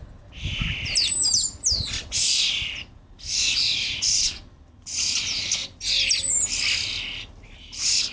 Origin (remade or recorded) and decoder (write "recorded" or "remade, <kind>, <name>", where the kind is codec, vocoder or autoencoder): recorded